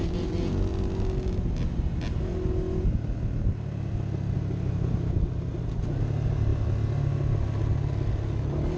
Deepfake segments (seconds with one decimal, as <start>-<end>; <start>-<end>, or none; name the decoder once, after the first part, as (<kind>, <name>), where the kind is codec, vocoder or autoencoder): none